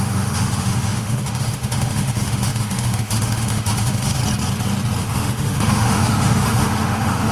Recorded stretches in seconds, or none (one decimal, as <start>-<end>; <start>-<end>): 4.2-5.0